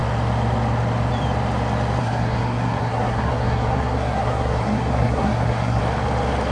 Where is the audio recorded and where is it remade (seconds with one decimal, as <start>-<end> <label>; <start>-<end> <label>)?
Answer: 0.0-2.0 recorded; 2.0-5.8 remade; 5.8-6.5 recorded